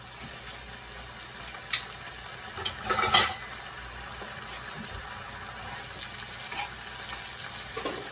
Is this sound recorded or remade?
recorded